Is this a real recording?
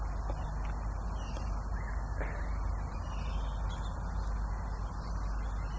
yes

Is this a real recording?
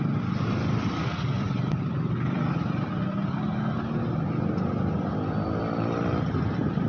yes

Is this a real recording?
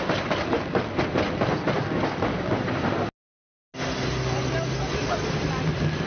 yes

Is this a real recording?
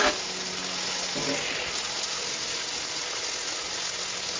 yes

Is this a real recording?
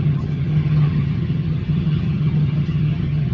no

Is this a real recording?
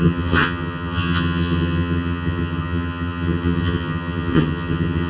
no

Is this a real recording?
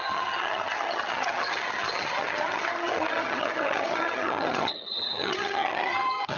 no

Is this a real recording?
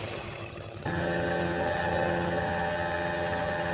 no